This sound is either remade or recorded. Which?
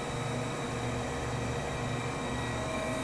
recorded